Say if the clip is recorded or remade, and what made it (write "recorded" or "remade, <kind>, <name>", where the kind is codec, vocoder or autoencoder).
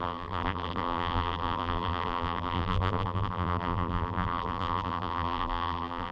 remade, vocoder, BigVGAN v2